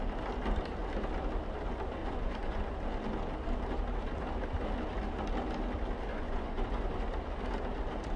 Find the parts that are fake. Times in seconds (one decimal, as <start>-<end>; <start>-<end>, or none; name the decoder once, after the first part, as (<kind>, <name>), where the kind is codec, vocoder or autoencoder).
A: 2.0-2.6 (vocoder, Vocos); 6.1-6.9